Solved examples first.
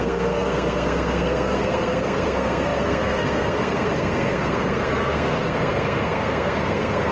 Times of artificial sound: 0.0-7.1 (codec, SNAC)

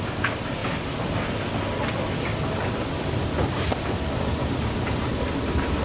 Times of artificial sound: none

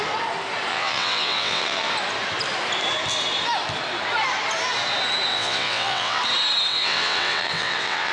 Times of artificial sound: 0.7-1.9 (vocoder, WaveNeXt); 5.3-6.2; 6.7-8.1

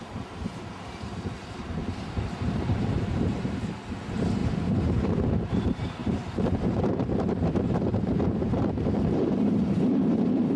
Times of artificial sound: 0.0-10.6 (vocoder, BigVGAN v2)